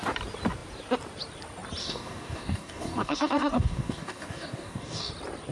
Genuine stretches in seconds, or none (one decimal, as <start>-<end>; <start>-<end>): 0.0-1.8; 5.1-5.5